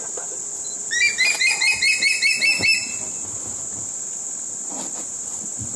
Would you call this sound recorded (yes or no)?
yes